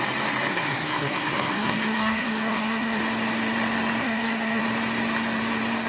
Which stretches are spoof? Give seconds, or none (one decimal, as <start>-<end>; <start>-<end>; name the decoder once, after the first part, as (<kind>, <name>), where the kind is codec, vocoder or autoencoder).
0.5-3.0 (codec, SNAC); 4.0-4.6